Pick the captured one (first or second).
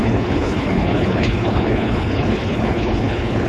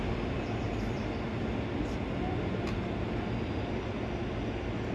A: second